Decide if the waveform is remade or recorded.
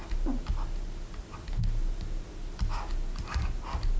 recorded